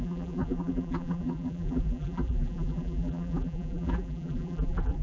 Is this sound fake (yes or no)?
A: yes